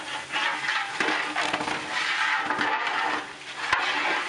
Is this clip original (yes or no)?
yes